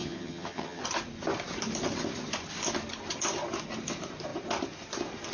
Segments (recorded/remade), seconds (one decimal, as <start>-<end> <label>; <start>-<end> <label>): 0.0-0.8 remade; 0.8-5.3 recorded